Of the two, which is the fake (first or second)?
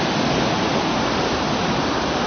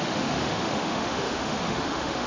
second